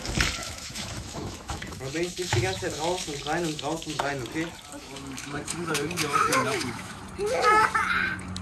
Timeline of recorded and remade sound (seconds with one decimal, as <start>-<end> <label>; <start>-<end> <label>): 0.0-0.4 recorded; 0.4-4.1 remade; 4.1-4.8 recorded; 4.8-7.0 remade; 7.0-8.4 recorded